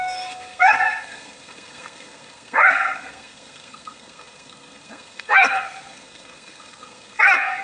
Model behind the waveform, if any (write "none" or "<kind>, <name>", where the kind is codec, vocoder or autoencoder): codec, SNAC